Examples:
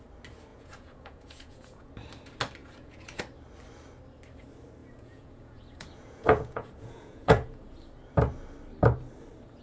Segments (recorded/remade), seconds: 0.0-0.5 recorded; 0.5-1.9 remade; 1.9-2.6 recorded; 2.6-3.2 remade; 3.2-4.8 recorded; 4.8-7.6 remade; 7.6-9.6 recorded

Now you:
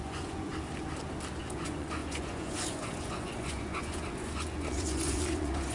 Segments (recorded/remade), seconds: 0.0-0.5 remade; 0.5-1.4 recorded; 1.4-5.7 remade

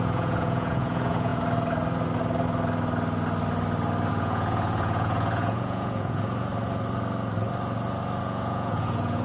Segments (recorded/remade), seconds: 0.0-1.3 remade; 1.3-4.1 recorded; 4.1-6.5 remade; 6.5-8.2 recorded; 8.2-9.2 remade

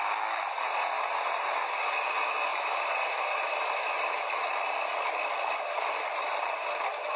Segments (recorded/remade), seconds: 0.0-7.2 recorded